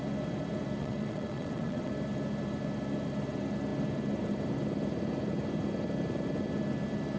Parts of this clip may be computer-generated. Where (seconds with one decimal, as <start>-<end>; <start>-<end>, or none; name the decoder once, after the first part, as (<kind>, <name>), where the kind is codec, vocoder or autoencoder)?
0.8-1.9 (vocoder, Vocos)